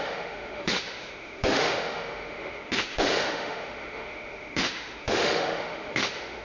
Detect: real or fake fake